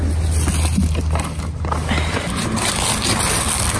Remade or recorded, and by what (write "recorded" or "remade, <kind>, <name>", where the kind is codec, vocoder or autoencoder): recorded